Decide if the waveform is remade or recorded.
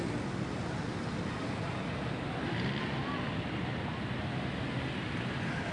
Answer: recorded